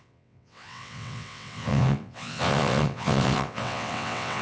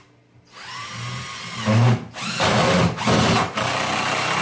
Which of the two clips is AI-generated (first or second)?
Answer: first